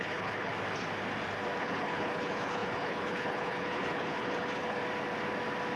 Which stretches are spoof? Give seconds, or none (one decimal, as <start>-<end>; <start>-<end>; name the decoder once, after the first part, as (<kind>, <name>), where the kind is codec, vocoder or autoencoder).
0.0-0.5 (codec, HILCodec); 1.6-4.8